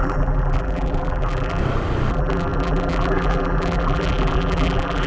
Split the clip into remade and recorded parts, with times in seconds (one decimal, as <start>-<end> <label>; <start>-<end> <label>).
0.0-1.6 remade; 1.6-2.1 recorded; 2.1-5.1 remade